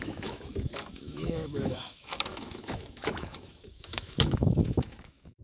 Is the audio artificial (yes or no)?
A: yes